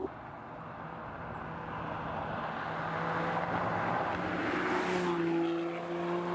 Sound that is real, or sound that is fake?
real